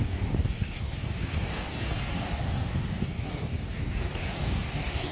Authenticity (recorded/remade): remade